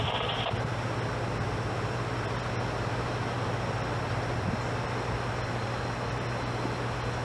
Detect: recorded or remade recorded